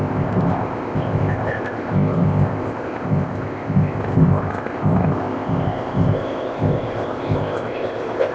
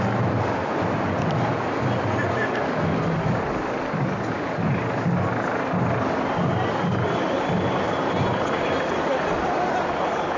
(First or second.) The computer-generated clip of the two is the first